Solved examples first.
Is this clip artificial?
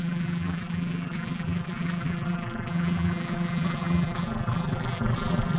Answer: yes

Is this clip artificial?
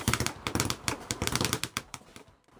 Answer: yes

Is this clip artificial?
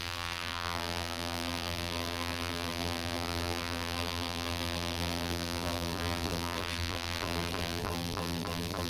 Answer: yes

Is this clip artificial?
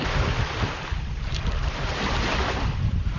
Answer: yes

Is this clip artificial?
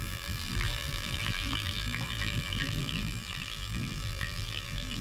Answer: yes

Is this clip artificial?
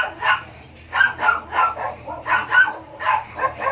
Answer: yes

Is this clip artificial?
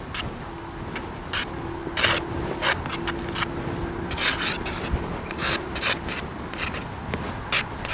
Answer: no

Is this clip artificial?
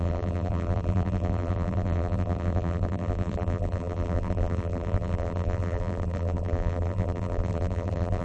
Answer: yes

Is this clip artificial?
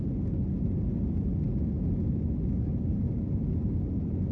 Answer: no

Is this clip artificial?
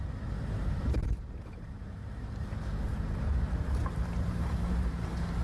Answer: yes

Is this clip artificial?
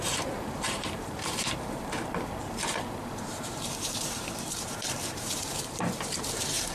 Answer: yes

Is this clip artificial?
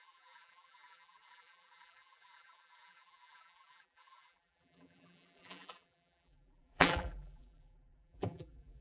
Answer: yes